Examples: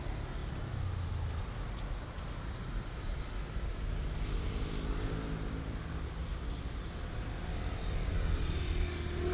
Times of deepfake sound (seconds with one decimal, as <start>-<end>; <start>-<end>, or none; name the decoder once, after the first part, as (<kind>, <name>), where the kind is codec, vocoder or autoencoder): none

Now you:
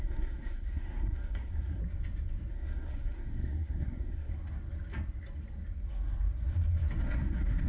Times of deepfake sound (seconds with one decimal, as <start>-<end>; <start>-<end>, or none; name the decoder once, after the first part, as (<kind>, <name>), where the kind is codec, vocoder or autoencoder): 0.0-1.8 (codec, SNAC); 2.5-4.3; 7.0-7.7

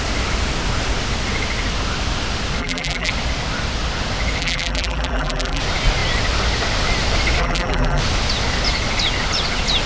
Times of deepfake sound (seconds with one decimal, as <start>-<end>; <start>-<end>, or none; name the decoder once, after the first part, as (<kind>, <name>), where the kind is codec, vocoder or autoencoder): 2.6-3.1 (vocoder, BigVGAN v2); 4.4-5.6; 7.4-8.0

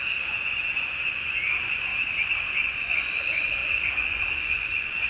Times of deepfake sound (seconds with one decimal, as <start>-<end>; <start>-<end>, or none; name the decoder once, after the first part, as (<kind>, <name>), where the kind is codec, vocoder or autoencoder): 0.0-1.9 (vocoder, Vocos); 2.5-5.1

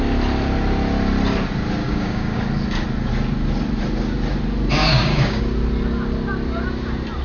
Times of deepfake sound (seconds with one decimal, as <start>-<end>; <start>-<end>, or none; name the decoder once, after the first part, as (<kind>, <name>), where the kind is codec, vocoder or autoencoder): 1.8-2.4 (codec, DAC); 4.8-5.4

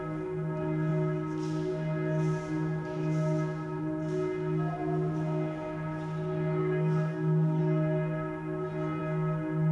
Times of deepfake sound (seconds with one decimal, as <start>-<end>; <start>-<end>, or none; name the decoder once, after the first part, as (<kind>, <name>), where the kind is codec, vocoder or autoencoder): 6.6-7.6 (codec, SNAC)

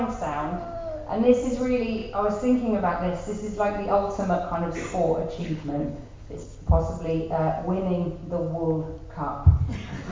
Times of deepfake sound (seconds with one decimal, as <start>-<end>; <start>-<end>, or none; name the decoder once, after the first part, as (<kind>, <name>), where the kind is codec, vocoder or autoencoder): 5.4-6.6 (codec, HILCodec)

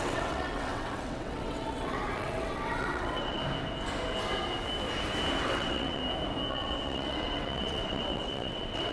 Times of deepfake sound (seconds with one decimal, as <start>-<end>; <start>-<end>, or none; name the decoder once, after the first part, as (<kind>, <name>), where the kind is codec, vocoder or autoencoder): 0.0-3.4 (vocoder, WaveNeXt); 5.4-6.0; 6.5-8.9